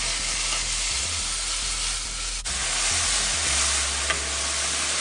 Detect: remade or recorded recorded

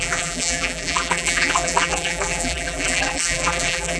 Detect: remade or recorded remade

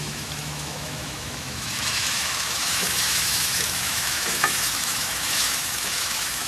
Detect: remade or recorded remade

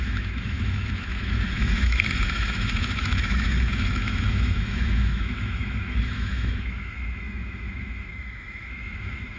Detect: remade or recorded remade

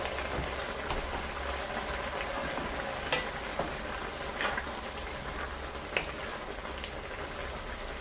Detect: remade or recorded recorded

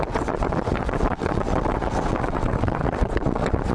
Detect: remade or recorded remade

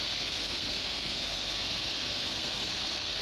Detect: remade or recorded remade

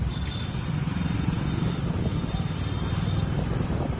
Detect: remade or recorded recorded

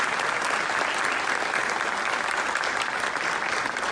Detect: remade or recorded recorded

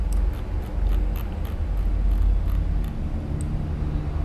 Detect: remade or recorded recorded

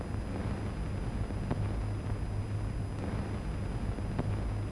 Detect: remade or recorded recorded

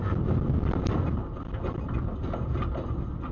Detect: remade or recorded recorded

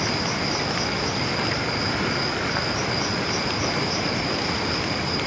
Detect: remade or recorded recorded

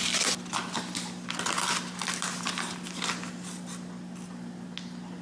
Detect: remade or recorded recorded